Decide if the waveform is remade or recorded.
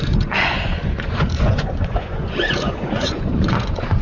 remade